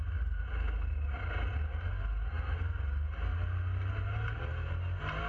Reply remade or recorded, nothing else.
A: recorded